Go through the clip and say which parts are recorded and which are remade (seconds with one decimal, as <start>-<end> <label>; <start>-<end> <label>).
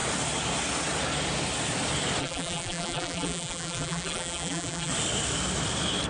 0.0-2.2 recorded; 2.2-4.9 remade; 4.9-6.1 recorded